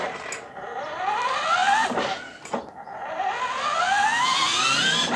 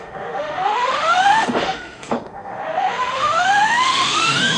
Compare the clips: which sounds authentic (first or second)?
first